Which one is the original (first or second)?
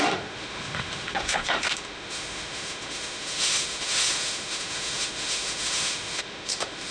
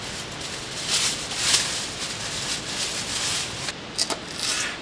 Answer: second